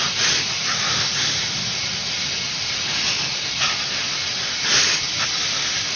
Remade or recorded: recorded